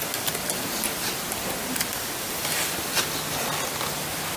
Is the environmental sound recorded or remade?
recorded